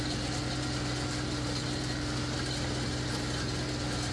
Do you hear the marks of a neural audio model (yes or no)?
no